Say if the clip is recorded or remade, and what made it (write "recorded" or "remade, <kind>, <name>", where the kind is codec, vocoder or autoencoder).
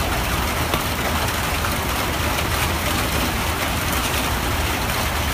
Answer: recorded